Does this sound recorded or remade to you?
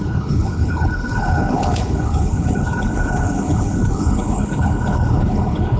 remade